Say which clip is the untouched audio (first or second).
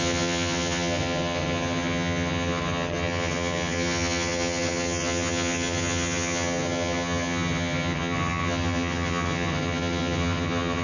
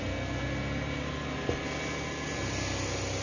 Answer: second